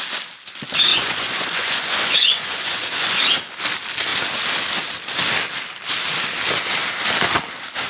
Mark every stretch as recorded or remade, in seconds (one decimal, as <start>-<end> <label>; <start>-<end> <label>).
0.0-0.9 recorded; 0.9-3.2 remade; 3.2-7.9 recorded